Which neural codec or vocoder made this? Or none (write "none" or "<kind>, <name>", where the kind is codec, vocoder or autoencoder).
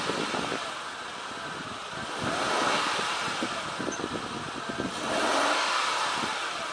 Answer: none